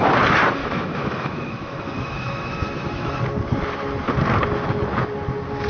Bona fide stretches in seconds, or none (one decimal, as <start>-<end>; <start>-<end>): 0.0-0.6; 3.1-5.7